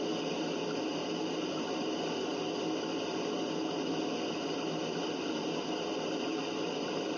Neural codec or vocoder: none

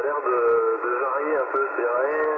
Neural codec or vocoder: none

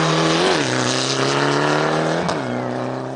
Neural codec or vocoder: none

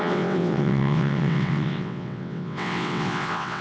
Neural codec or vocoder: vocoder, WaveNeXt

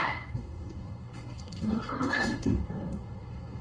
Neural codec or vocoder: codec, SNAC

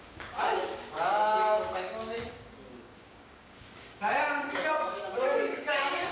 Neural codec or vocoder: codec, DAC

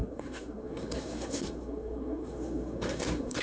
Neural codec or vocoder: codec, SNAC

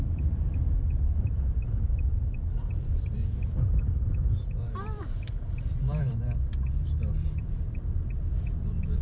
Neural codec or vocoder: vocoder, BigVGAN v2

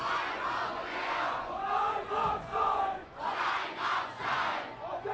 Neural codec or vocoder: vocoder, Vocos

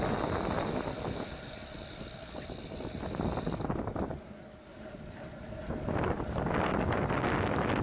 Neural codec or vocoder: none